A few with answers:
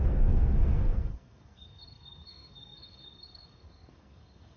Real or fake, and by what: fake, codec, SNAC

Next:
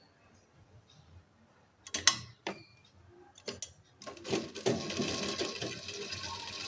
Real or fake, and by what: real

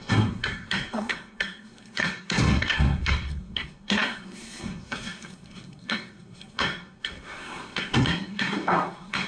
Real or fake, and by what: fake, codec, SNAC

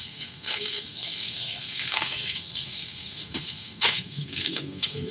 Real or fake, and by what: fake, codec, SNAC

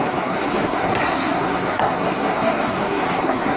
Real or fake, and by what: fake, codec, SNAC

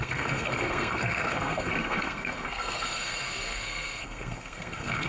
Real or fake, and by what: fake, codec, SNAC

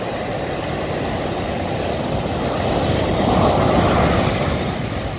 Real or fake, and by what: real